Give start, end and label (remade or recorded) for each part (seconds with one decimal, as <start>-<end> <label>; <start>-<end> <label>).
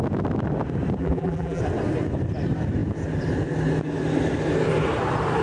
0.0-1.0 recorded; 1.0-1.6 remade; 1.6-5.4 recorded